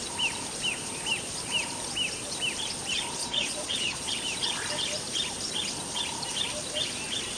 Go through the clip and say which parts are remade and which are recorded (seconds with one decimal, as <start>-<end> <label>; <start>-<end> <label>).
0.0-3.2 recorded; 3.2-4.1 remade; 4.1-7.4 recorded